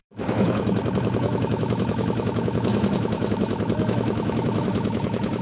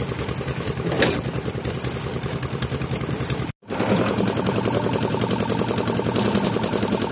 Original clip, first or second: second